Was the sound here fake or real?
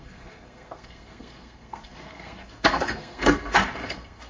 fake